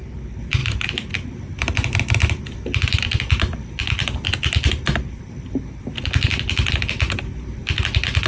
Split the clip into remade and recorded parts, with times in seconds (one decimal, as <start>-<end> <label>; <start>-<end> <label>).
0.0-8.3 recorded